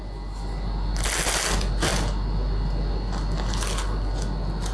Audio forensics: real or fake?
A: real